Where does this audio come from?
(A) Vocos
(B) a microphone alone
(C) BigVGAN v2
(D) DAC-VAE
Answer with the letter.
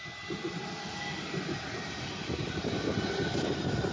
B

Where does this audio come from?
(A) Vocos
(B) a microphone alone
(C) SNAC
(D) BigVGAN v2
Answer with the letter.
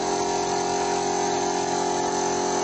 B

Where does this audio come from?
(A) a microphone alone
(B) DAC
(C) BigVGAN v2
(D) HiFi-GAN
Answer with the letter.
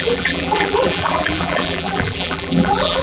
C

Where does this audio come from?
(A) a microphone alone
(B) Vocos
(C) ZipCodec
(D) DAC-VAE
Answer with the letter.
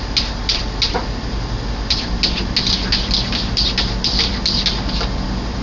A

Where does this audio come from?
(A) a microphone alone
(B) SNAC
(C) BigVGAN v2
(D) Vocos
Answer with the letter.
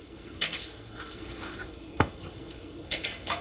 B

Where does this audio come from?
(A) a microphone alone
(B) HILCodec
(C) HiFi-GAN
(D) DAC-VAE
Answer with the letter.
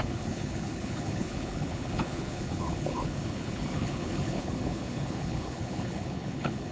B